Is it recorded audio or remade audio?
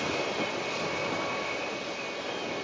recorded